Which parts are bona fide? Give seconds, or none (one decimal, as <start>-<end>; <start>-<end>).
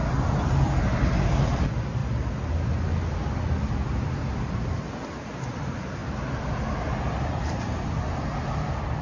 0.0-9.0